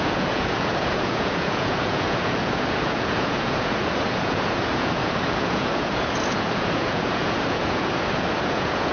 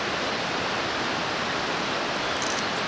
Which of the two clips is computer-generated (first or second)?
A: first